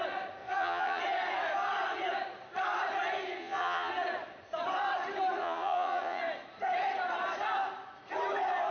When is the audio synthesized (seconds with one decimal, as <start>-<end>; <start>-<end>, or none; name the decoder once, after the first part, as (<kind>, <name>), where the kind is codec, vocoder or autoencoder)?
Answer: 0.4-1.0 (vocoder, Vocos); 3.4-3.9; 5.4-6.2